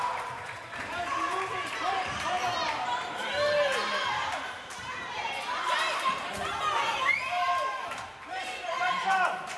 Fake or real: fake